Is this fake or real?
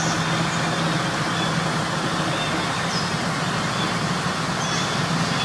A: real